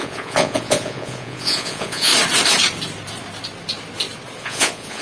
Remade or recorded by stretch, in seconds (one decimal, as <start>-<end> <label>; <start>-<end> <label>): 0.0-2.1 remade; 2.1-4.4 recorded; 4.4-5.0 remade